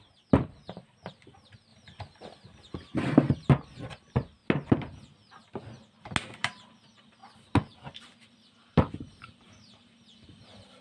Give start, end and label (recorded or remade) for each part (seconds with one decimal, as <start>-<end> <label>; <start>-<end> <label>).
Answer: 0.0-4.4 remade; 4.4-6.3 recorded; 6.3-7.2 remade; 7.2-8.6 recorded; 8.6-10.8 remade